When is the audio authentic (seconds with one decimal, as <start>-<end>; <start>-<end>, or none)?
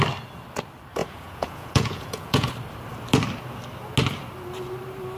0.0-1.0; 2.5-5.2